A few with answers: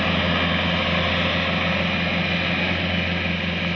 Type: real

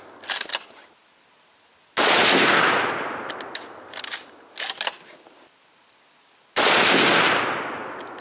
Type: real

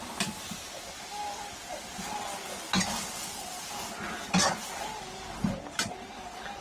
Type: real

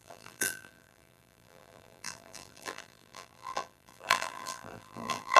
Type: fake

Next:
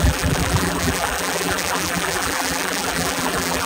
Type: fake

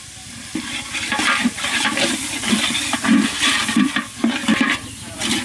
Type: real